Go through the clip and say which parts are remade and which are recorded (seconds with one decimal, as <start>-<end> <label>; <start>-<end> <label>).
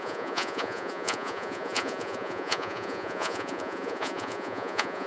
0.0-5.1 remade